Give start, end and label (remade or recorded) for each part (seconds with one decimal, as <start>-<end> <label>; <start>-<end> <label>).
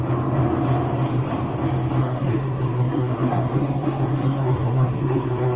0.0-2.0 recorded; 2.0-5.6 remade